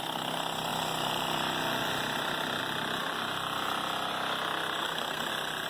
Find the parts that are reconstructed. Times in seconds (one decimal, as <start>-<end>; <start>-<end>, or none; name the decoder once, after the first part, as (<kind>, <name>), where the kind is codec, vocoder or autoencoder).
4.8-5.3 (codec, SNAC)